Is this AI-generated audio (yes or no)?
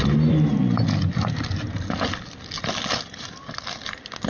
no